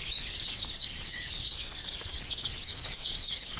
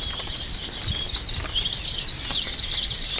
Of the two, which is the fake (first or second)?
first